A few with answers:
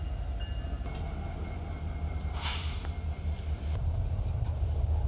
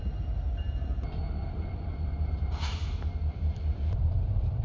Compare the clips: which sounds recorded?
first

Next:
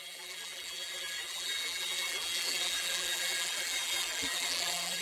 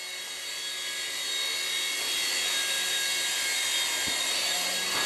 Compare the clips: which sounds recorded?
second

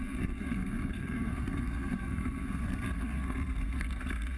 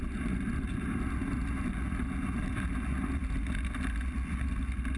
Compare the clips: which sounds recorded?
second